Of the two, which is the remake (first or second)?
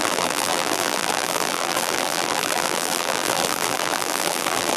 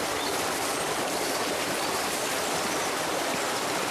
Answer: first